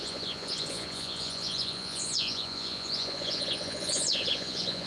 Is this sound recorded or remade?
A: remade